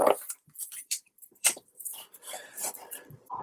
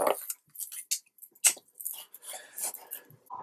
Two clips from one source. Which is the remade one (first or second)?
first